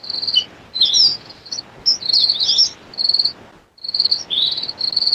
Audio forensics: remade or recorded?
recorded